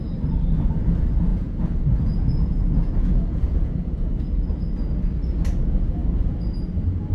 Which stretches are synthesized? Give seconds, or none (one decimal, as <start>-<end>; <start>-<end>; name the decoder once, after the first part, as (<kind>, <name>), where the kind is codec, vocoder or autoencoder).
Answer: 1.3-4.2 (vocoder, Vocos)